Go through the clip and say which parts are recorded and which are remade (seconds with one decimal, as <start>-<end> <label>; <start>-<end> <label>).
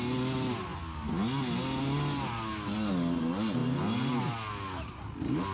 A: 0.0-5.5 recorded